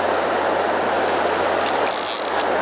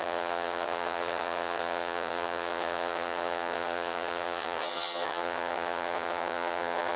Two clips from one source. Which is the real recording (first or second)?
first